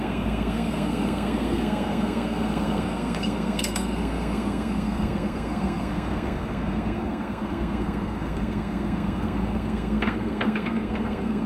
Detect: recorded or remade remade